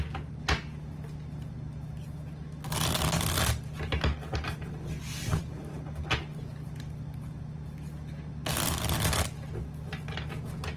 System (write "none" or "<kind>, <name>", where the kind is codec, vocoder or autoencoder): none